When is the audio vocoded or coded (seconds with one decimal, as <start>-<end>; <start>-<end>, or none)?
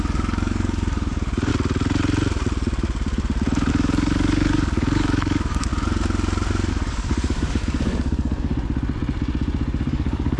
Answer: 0.0-1.5; 3.7-5.7; 6.7-8.5; 9.9-10.4